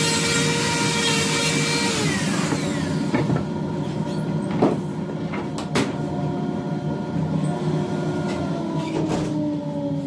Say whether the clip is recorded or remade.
recorded